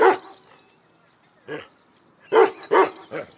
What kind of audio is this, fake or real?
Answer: real